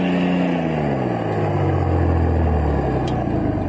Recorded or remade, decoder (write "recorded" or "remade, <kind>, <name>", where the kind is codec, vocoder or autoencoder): recorded